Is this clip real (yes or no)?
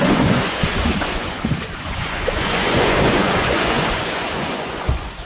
no